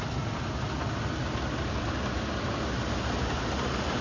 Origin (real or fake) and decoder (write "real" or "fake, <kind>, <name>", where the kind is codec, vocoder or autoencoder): real